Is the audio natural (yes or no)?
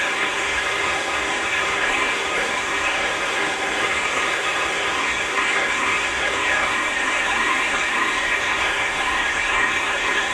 no